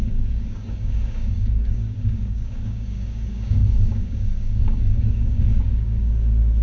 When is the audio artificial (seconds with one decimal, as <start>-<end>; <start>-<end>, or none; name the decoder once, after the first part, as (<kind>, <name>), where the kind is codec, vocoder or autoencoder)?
0.0-6.6 (codec, DAC)